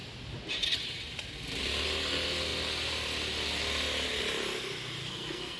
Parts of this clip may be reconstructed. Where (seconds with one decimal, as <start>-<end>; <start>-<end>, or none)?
5.0-5.6